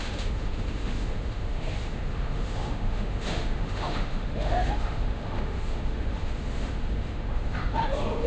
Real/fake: fake